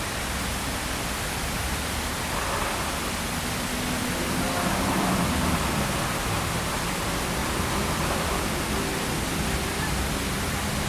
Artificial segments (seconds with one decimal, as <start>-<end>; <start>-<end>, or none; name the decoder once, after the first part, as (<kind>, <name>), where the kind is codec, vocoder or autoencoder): 7.4-8.3 (vocoder, BigVGAN v2)